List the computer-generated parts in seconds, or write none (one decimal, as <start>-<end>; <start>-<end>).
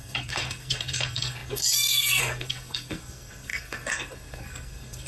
0.0-5.1